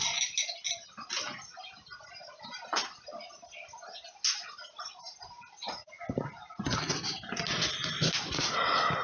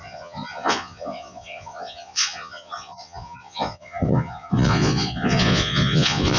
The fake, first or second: second